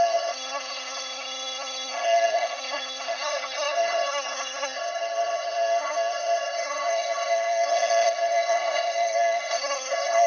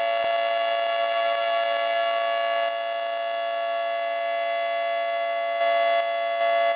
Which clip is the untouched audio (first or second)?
second